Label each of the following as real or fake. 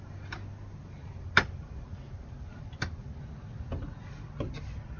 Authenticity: real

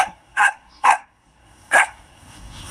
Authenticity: fake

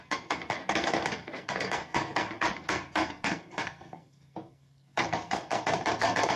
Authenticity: fake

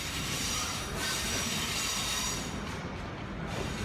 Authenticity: fake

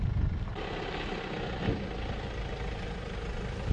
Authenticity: real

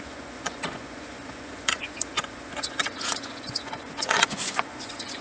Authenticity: fake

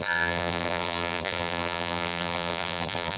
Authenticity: fake